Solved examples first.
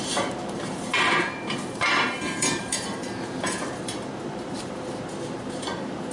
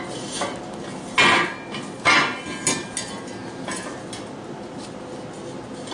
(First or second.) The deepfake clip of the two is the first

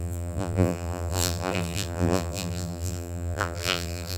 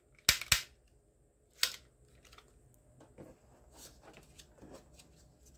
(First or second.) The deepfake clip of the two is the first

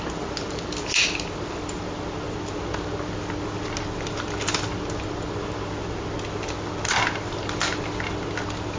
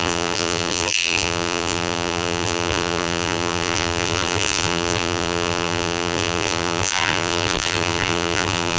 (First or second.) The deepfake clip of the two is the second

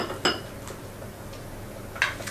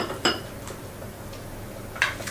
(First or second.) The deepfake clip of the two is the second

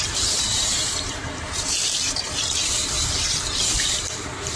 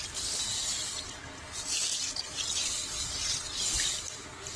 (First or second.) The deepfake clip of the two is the first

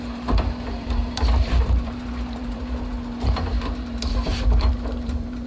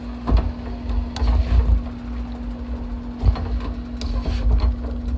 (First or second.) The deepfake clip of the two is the first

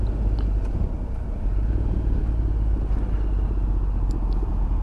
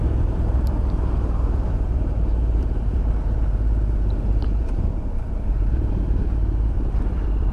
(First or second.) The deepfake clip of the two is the second